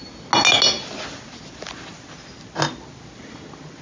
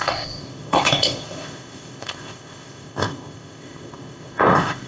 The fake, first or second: second